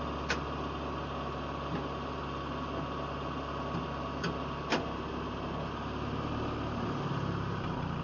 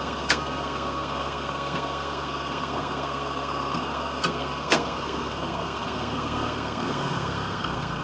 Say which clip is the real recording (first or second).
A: first